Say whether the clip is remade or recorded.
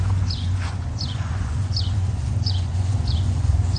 remade